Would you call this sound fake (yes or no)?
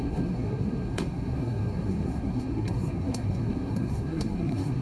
yes